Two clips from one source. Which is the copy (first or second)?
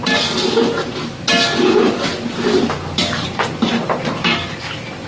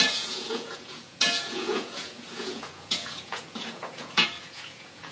second